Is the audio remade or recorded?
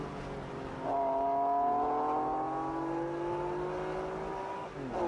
recorded